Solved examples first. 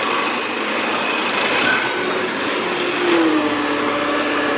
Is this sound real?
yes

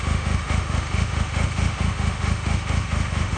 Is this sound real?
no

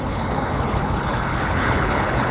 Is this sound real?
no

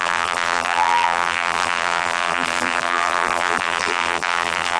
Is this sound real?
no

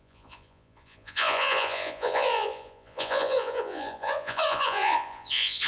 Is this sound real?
no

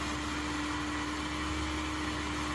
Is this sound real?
yes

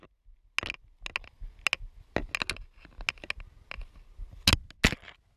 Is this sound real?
yes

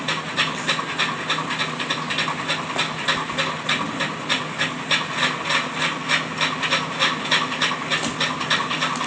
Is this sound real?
yes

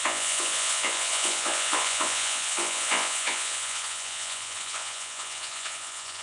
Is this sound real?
no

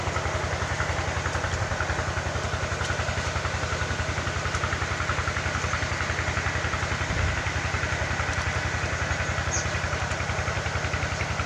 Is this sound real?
yes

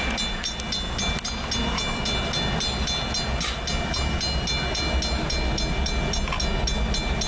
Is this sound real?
yes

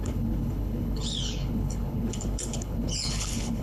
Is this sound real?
no